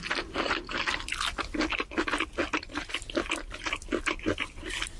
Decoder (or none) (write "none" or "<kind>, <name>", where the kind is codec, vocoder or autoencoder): none